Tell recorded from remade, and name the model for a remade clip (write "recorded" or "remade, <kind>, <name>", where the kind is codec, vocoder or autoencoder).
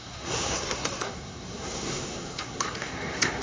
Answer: remade, codec, SNAC